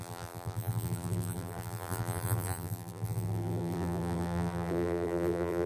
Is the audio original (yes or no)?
no